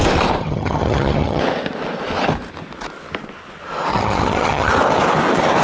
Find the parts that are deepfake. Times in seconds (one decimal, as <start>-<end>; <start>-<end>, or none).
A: 0.4-1.4; 3.9-4.7

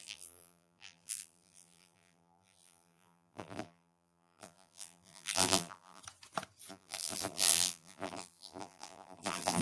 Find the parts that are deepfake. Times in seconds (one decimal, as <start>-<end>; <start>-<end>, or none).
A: 0.0-6.0; 6.7-9.6

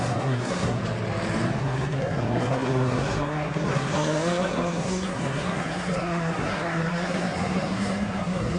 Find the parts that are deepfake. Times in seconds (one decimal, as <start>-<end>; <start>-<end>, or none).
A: 0.0-0.8; 1.6-8.6

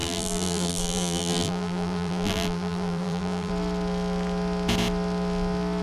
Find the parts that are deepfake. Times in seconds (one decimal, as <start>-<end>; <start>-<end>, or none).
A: 0.0-3.5

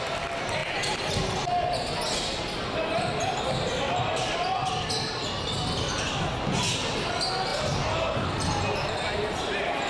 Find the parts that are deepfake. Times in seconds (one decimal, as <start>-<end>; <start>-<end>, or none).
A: 0.6-1.1; 3.7-4.9

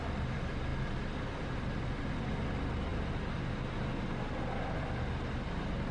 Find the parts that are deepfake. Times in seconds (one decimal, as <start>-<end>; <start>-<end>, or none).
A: none

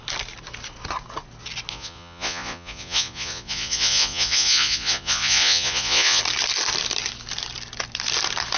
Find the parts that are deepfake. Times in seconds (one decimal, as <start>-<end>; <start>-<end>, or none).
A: 1.7-6.2

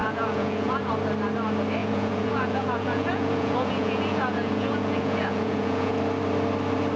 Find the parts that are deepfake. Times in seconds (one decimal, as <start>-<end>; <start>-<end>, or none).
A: 0.0-0.9; 1.8-6.0